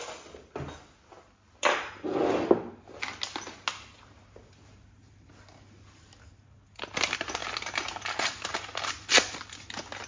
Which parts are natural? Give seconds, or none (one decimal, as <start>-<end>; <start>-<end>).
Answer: 0.0-10.1